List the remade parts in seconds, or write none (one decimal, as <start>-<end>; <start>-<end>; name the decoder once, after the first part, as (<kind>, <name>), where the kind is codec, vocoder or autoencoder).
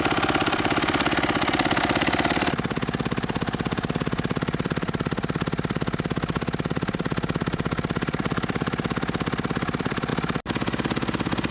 0.0-10.1 (vocoder, BigVGAN v2)